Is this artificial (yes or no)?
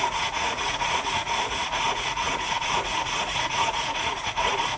yes